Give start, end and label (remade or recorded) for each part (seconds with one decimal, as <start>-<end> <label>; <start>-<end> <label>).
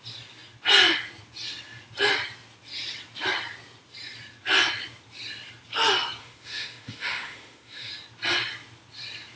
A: 0.0-6.2 recorded; 6.2-7.9 remade; 7.9-9.4 recorded